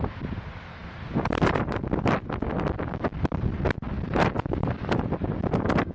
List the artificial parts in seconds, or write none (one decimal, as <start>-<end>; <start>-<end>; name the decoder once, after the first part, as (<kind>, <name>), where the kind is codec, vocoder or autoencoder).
none